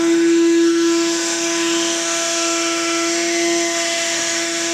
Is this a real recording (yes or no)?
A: no